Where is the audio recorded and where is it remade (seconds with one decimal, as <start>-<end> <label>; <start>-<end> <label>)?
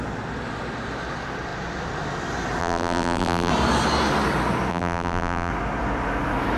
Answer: 0.0-2.6 recorded; 2.6-3.5 remade; 3.5-4.7 recorded; 4.7-5.5 remade; 5.5-6.6 recorded